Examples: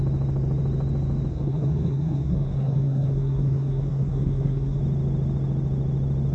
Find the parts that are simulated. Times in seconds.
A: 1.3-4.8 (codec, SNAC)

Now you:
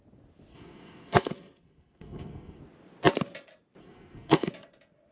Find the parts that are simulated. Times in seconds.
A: 0.5-2.6 (codec, SNAC); 3.8-4.5

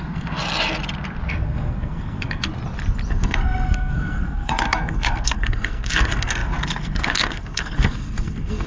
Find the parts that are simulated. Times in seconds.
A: 0.0-0.4 (codec, SNAC); 1.3-2.5; 3.1-8.7

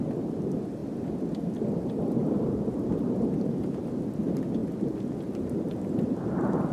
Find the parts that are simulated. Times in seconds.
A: 2.2-3.8 (vocoder, BigVGAN v2)

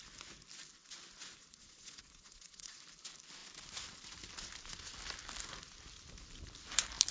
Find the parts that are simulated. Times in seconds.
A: 1.4-2.8 (vocoder, Vocos)